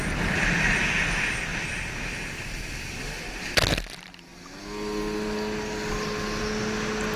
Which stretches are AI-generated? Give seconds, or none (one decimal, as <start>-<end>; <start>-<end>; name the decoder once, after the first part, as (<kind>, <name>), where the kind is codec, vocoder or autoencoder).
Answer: none